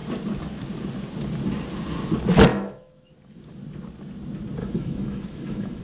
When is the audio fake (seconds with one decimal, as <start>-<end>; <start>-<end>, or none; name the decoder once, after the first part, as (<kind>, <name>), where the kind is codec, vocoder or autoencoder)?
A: 2.5-3.1 (autoencoder, DAC-VAE); 4.6-5.8

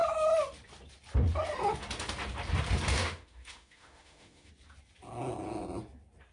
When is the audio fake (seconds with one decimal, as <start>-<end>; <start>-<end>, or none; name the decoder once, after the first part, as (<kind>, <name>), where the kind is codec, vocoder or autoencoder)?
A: 2.9-4.5 (autoencoder, DAC-VAE)

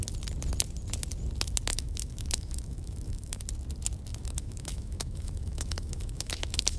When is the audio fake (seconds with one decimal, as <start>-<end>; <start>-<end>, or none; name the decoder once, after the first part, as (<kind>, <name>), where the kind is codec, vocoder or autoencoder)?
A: 1.7-3.4 (autoencoder, DAC-VAE); 4.1-6.8